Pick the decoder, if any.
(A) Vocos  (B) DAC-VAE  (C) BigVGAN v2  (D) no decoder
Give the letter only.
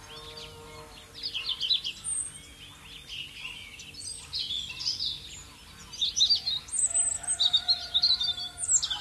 D